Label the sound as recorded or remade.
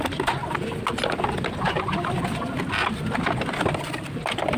recorded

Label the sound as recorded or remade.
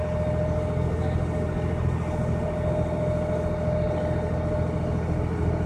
recorded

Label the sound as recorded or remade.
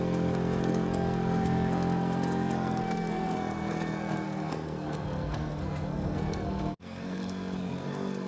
remade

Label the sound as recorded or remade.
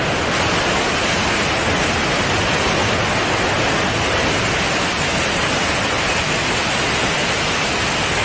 recorded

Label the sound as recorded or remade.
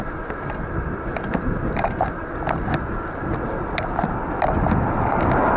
recorded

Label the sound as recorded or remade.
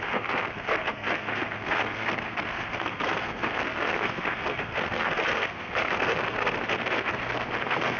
remade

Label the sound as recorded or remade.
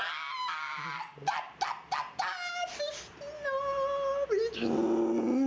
recorded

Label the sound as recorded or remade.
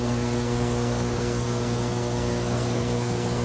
remade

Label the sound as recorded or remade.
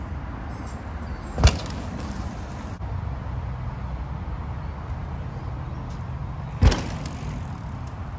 recorded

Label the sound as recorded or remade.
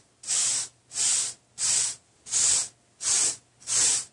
recorded